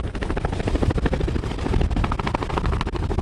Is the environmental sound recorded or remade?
recorded